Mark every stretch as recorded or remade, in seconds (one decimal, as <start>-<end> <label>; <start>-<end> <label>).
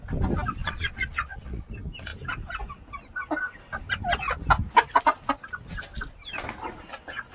0.0-0.6 recorded; 0.6-1.7 remade; 1.7-7.3 recorded